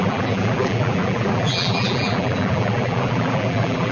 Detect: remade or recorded remade